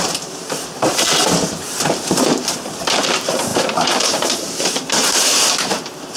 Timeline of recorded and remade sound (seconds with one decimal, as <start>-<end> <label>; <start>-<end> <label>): 0.0-6.2 remade